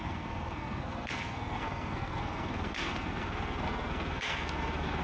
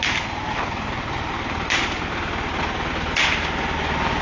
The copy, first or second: first